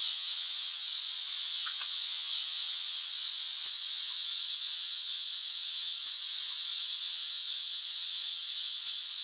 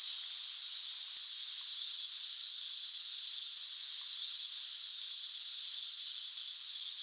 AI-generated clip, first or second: first